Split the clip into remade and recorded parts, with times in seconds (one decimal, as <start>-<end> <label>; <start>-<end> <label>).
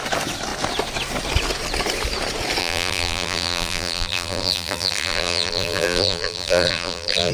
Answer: 0.0-2.6 recorded; 2.6-7.3 remade